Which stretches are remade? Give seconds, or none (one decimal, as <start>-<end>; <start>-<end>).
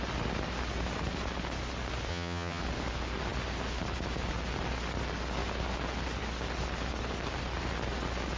2.1-2.6